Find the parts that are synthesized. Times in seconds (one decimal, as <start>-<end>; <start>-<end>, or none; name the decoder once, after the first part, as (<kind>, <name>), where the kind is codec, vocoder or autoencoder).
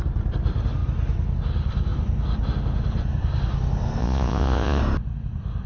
4.0-4.8 (vocoder, Vocos)